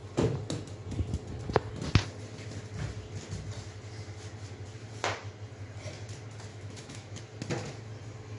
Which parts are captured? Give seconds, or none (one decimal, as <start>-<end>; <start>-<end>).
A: 0.0-6.5; 7.2-8.4